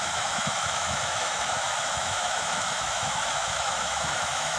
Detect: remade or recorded remade